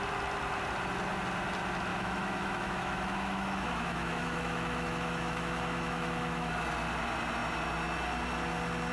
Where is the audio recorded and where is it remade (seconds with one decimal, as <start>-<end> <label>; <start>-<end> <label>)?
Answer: 0.0-1.9 recorded; 1.9-6.5 remade; 6.5-8.9 recorded

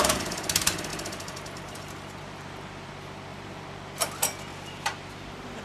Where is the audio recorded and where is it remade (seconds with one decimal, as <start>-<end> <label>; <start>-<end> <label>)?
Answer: 0.0-0.9 recorded; 0.9-2.9 remade; 2.9-3.3 recorded; 3.3-4.1 remade; 4.1-4.5 recorded; 4.5-5.1 remade; 5.1-5.6 recorded

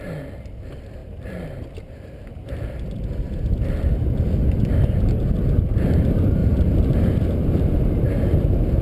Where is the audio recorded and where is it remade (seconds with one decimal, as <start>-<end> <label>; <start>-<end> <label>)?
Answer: 0.0-1.0 recorded; 1.0-3.8 remade; 3.8-6.4 recorded; 6.4-8.8 remade

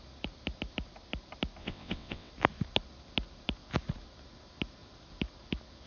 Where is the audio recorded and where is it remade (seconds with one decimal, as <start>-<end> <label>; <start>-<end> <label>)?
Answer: 0.0-1.6 recorded; 1.6-2.3 remade; 2.3-5.9 recorded

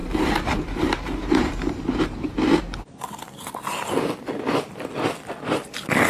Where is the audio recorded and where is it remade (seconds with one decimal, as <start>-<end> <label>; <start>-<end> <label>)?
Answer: 0.0-2.0 remade; 2.0-6.1 recorded

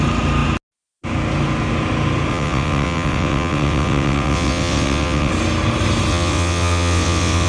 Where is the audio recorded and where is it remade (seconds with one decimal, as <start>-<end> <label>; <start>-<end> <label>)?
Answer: 0.0-2.3 recorded; 2.3-5.3 remade; 5.3-6.1 recorded; 6.1-7.5 remade